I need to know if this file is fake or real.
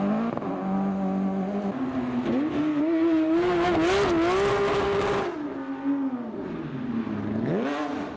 real